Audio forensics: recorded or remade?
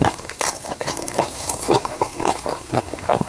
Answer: remade